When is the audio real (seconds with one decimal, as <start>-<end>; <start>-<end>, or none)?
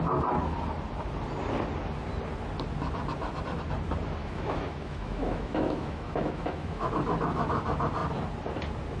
0.0-4.2; 6.9-9.0